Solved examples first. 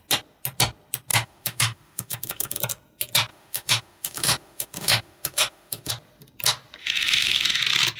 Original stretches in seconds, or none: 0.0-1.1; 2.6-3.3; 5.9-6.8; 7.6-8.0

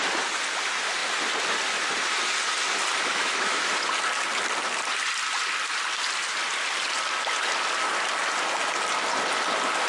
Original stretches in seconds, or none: 0.0-3.1; 3.7-9.9

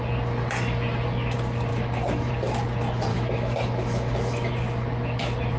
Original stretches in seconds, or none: 0.0-1.7; 2.3-3.1; 4.5-5.6

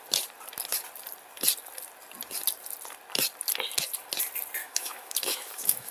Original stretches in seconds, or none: 0.0-4.6

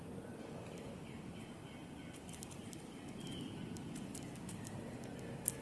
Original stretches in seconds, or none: 0.0-5.6

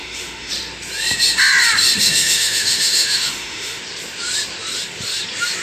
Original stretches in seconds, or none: 0.5-2.0; 3.8-5.6

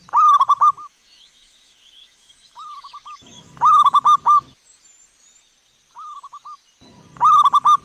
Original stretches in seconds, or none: 0.0-0.9; 4.0-7.8

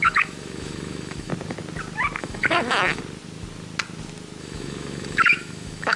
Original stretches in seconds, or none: 1.3-2.2; 3.0-4.4